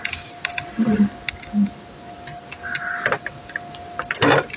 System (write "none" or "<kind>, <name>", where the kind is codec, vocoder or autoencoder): none